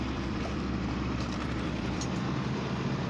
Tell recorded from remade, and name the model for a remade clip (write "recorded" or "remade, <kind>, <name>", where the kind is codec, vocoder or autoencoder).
remade, vocoder, BigVGAN v2